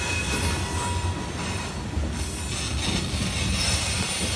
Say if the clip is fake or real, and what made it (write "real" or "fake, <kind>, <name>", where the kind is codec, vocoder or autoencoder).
real